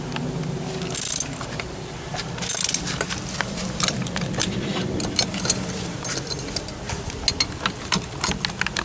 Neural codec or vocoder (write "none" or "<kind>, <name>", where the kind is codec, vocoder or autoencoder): none